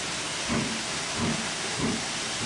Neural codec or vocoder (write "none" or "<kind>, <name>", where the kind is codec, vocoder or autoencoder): none